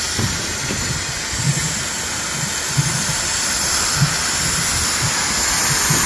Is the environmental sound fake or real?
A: real